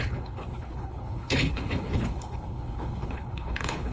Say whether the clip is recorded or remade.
remade